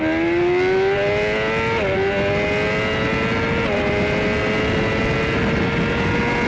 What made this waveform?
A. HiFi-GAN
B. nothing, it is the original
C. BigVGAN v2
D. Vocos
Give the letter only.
B